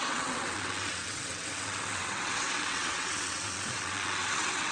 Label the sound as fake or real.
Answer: fake